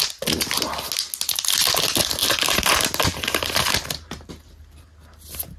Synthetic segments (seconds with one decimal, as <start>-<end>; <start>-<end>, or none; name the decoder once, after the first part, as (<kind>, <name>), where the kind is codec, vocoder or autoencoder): 2.2-4.3 (vocoder, BigVGAN v2)